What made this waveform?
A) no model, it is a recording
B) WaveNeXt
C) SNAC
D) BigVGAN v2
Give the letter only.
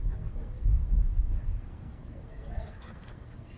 C